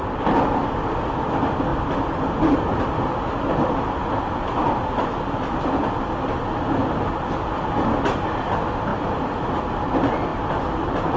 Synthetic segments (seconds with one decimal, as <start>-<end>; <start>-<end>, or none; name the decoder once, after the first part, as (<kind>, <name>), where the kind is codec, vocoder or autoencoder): 8.9-9.6 (vocoder, BigVGAN v2); 10.3-11.2